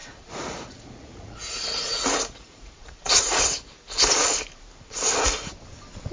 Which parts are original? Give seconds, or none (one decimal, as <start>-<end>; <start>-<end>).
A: 3.7-6.1